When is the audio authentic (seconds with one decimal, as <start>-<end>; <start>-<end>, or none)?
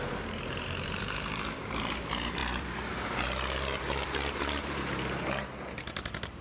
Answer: none